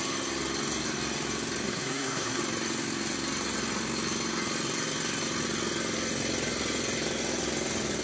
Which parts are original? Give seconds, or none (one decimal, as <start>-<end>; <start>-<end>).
0.0-1.6; 2.4-8.0